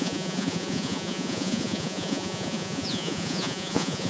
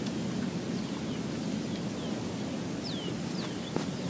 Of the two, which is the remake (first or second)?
first